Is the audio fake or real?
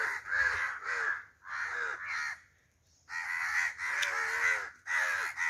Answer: real